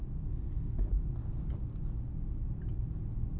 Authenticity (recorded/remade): recorded